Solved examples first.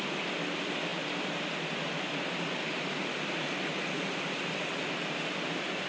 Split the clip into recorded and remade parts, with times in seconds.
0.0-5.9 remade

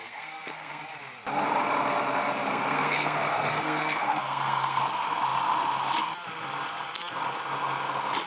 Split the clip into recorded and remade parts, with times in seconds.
0.0-0.8 remade; 0.8-2.5 recorded; 2.5-4.8 remade; 4.8-8.3 recorded

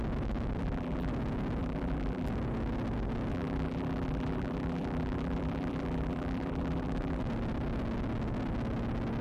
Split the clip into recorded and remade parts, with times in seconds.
0.0-0.6 recorded; 0.6-1.1 remade; 1.1-1.6 recorded; 1.6-2.3 remade; 2.3-3.3 recorded; 3.3-7.2 remade; 7.2-9.2 recorded

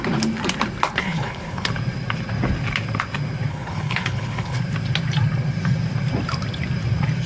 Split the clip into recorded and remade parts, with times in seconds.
0.0-1.0 recorded; 1.0-1.7 remade; 1.7-3.5 recorded; 3.5-4.6 remade; 4.6-7.3 recorded

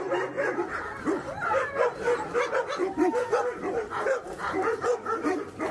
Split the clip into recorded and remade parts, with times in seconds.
0.0-5.7 recorded

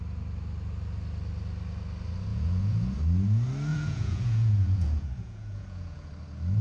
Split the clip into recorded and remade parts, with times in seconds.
0.0-2.3 recorded; 2.3-3.0 remade; 3.0-3.7 recorded; 3.7-6.1 remade; 6.1-6.6 recorded

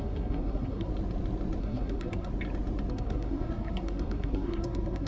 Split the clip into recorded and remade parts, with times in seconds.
0.0-0.9 remade; 0.9-1.6 recorded; 1.6-2.3 remade; 2.3-2.9 recorded; 2.9-5.1 remade